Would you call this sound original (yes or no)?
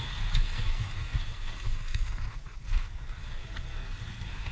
no